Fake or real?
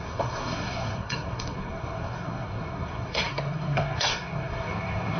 fake